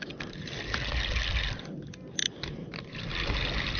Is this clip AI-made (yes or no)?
no